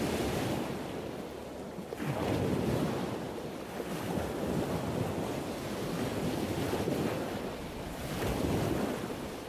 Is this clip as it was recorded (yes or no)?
yes